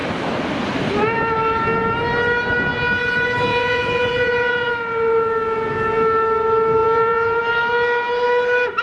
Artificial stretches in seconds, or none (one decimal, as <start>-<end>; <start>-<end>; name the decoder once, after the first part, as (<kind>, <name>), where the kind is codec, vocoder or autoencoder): 3.5-4.7 (vocoder, Vocos); 6.8-7.4